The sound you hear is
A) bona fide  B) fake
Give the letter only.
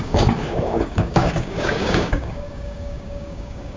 B